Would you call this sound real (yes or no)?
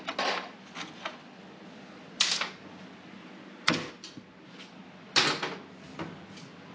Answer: yes